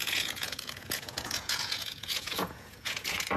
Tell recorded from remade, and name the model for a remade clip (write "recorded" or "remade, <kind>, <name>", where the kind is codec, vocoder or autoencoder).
remade, vocoder, Vocos